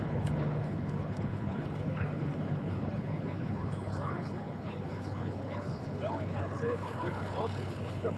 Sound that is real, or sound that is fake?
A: fake